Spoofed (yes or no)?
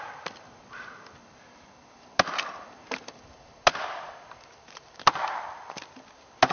no